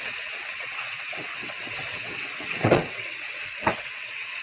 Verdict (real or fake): fake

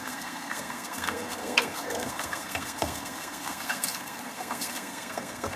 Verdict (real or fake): fake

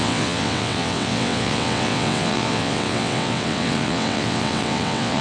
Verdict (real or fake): fake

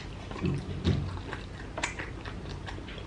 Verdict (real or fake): real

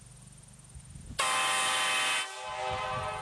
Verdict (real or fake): real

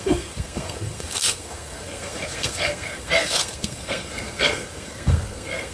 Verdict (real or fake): fake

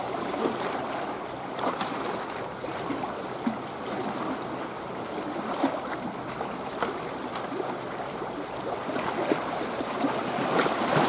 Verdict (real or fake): fake